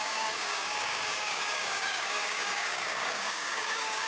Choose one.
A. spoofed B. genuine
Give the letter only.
A